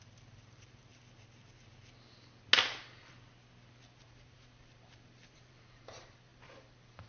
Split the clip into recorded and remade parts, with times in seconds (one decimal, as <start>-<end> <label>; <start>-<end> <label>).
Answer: 0.0-0.9 remade; 0.9-4.0 recorded; 4.0-7.1 remade